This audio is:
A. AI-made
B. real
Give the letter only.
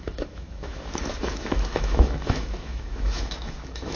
A